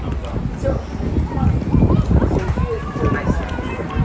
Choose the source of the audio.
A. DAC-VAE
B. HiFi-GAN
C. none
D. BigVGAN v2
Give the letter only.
C